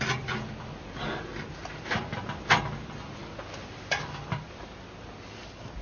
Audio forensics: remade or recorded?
recorded